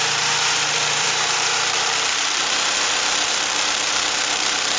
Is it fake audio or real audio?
fake